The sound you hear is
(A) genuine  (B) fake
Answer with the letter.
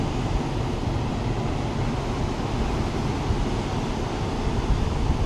A